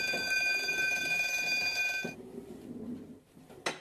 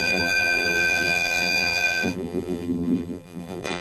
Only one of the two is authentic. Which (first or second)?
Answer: first